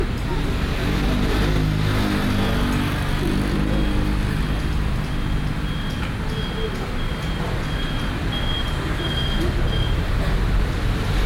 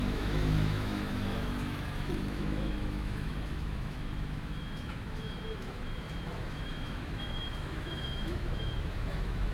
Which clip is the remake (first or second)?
second